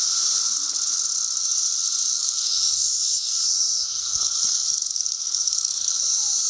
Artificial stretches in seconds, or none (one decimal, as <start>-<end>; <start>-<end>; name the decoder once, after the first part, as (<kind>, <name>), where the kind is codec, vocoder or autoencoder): 2.1-6.0 (codec, SNAC)